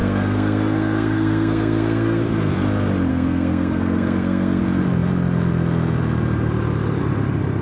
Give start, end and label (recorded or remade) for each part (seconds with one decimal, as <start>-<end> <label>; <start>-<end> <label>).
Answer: 0.0-2.5 remade; 2.5-3.1 recorded; 3.1-4.6 remade; 4.6-7.6 recorded